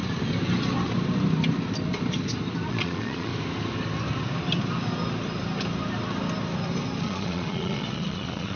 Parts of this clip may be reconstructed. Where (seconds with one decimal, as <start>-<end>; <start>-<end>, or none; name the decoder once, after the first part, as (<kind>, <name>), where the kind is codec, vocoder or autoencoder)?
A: 2.7-3.3 (vocoder, Vocos); 7.0-8.6